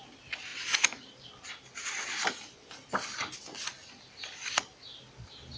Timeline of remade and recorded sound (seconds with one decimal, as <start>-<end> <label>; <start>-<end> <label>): 0.0-5.6 recorded

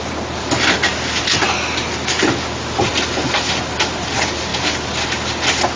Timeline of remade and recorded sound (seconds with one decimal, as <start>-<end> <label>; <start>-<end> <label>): 0.0-5.8 recorded

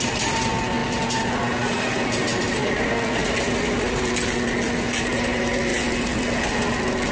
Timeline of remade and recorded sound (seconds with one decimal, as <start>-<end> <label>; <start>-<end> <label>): 0.0-7.1 recorded

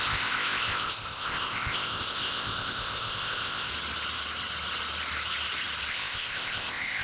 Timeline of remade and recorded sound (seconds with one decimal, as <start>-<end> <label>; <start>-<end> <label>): 0.0-3.7 remade; 3.7-5.9 recorded; 5.9-7.0 remade